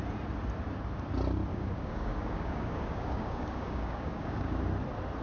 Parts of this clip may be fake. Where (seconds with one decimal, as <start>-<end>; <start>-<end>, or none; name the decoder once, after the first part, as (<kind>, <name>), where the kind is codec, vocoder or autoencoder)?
1.5-4.6 (codec, DAC)